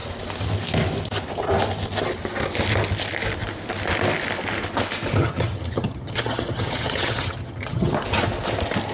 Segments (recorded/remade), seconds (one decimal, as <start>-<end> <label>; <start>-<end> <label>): 0.0-5.2 recorded; 5.2-7.9 remade; 7.9-8.9 recorded